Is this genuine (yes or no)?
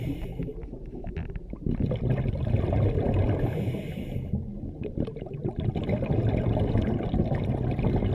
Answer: yes